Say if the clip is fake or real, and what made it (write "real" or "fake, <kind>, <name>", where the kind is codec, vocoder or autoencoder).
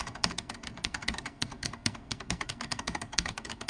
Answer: fake, codec, SNAC